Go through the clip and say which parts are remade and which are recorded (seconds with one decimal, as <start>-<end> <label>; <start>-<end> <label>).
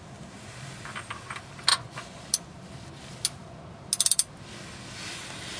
0.0-1.7 recorded; 1.7-2.2 remade; 2.2-5.6 recorded